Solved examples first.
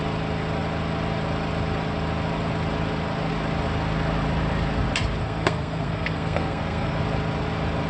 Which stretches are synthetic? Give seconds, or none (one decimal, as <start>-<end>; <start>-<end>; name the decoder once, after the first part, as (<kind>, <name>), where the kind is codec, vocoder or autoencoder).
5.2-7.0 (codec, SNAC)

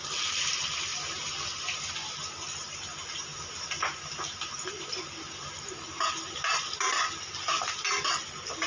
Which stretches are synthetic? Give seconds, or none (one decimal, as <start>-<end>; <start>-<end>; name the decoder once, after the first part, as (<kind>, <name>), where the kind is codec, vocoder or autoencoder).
none

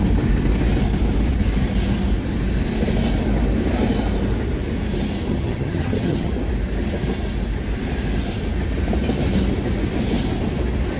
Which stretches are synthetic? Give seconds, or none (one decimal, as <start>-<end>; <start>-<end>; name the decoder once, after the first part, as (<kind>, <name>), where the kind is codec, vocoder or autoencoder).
5.3-6.3 (vocoder, HiFi-GAN)

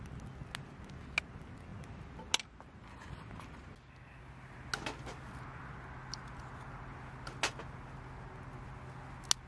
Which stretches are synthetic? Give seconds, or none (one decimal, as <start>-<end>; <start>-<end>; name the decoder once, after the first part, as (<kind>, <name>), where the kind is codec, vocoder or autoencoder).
none

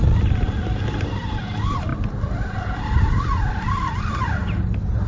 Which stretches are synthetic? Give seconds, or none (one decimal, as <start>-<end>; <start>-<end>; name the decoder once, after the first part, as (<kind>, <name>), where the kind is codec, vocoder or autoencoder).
none